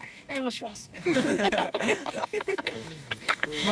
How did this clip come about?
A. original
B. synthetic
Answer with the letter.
B